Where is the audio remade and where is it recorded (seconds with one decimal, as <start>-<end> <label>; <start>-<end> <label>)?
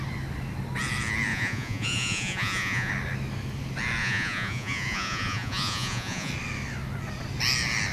0.0-1.3 recorded; 1.3-2.9 remade; 2.9-4.0 recorded; 4.0-6.3 remade; 6.3-7.9 recorded